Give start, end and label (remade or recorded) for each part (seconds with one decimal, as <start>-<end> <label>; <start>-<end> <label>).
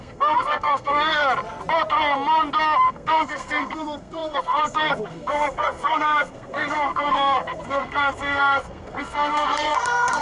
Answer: 0.0-1.2 remade; 1.2-2.9 recorded; 2.9-10.2 remade